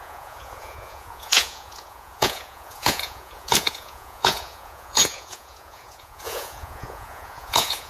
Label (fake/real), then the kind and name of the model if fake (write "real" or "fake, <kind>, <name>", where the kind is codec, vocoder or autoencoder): fake, vocoder, Vocos